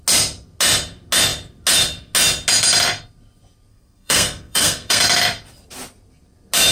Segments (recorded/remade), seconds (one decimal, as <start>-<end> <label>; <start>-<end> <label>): 0.0-3.7 recorded; 3.7-5.0 remade; 5.0-6.7 recorded

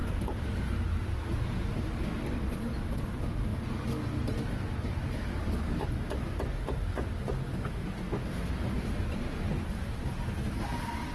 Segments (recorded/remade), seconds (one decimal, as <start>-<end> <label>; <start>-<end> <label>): 0.0-11.1 recorded

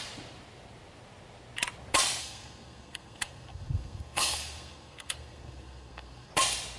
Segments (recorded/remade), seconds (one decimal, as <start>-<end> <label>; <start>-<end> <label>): 0.0-2.2 recorded; 2.2-6.3 remade; 6.3-6.8 recorded